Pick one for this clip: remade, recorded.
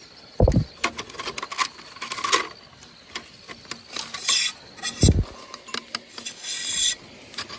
recorded